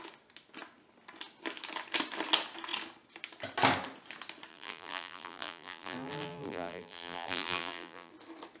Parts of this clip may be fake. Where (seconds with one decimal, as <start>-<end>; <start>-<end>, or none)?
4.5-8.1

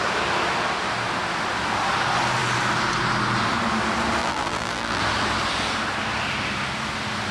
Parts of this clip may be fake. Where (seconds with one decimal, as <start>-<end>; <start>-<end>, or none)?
4.2-5.0

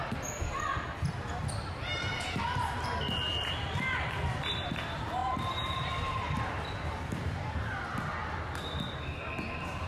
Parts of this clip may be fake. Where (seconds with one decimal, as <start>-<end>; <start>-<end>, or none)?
5.2-6.4; 6.9-7.7